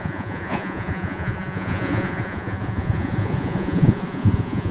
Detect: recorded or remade remade